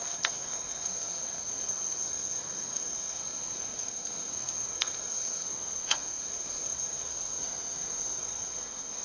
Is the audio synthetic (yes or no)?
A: yes